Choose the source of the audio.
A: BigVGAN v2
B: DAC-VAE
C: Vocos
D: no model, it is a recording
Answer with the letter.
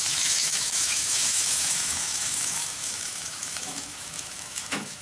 B